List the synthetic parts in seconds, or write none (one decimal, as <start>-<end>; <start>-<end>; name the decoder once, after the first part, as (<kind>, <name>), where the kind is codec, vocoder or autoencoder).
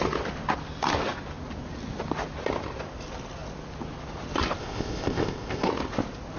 4.6-5.7 (codec, ZipCodec)